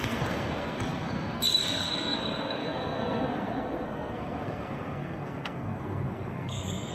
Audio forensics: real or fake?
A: fake